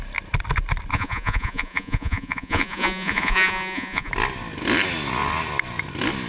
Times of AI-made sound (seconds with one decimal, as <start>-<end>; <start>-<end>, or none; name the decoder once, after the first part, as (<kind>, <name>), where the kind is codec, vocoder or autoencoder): 0.9-4.1 (vocoder, Vocos)